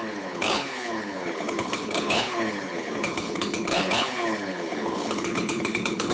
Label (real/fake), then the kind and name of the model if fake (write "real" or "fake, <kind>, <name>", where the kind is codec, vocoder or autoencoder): fake, codec, HILCodec